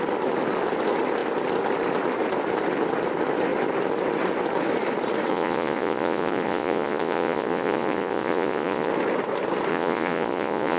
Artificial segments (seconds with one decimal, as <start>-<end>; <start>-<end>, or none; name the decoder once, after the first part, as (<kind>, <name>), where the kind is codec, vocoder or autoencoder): 5.3-8.9 (vocoder, Vocos); 9.7-10.8